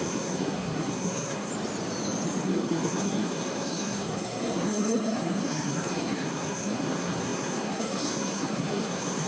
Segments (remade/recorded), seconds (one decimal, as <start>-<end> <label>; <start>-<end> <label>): 0.0-1.5 remade; 1.5-2.4 recorded; 2.4-9.3 remade